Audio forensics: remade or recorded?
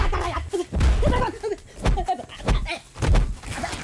recorded